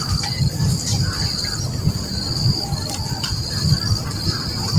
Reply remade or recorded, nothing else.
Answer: recorded